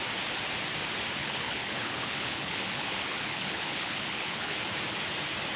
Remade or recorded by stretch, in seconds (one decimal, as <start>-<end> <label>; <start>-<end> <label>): 0.0-1.2 recorded; 1.2-4.6 remade; 4.6-5.6 recorded